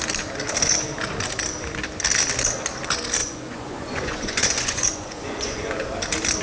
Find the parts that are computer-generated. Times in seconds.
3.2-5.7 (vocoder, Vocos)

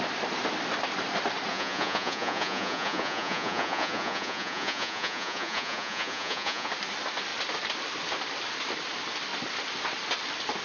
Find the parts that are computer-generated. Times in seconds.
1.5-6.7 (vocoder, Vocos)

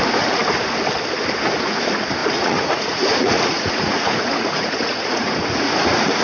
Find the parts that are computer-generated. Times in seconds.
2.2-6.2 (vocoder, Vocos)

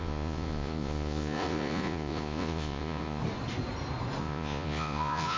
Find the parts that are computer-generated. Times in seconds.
0.0-3.2 (vocoder, Vocos); 4.2-5.4